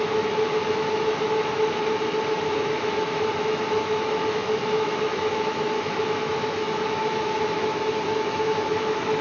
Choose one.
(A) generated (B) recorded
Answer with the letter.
A